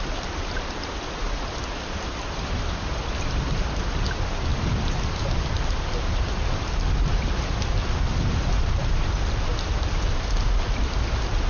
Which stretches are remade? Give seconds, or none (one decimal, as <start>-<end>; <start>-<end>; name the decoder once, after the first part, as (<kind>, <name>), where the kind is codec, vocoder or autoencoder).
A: none